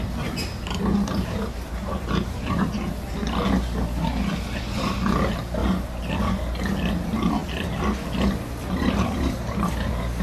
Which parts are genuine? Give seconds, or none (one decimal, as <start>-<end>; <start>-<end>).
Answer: 0.0-0.9; 2.6-5.6; 6.1-10.2